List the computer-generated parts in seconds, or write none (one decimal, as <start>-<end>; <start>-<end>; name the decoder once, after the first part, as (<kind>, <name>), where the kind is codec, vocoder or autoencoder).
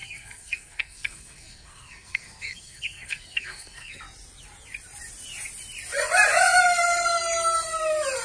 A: 0.0-4.0 (codec, SNAC)